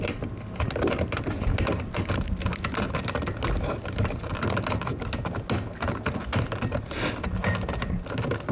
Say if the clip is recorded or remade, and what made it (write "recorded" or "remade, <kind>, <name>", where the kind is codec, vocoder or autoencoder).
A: recorded